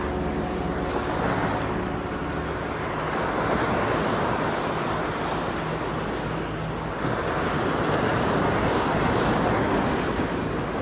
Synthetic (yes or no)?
no